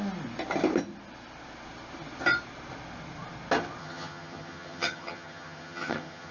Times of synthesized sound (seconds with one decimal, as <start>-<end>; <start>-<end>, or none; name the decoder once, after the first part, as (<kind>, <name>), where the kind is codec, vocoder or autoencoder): 3.8-6.3 (vocoder, HiFi-GAN)